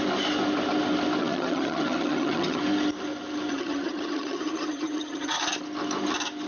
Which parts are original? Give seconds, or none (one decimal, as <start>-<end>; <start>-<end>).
0.0-1.2; 2.6-3.5; 5.4-6.5